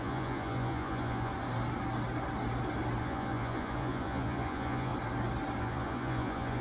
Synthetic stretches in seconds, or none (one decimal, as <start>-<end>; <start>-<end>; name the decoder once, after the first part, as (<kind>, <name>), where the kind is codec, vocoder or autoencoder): 0.0-1.3 (vocoder, Vocos); 3.0-4.9; 5.6-6.6